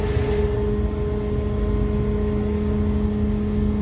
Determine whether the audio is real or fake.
real